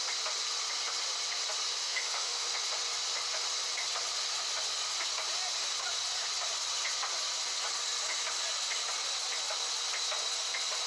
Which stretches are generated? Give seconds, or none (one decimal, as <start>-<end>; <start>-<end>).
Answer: 1.8-2.5